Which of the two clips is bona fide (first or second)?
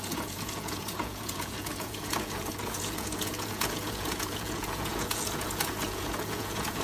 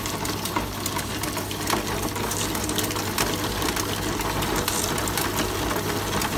second